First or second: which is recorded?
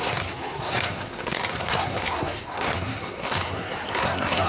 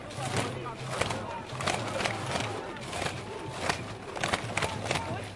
second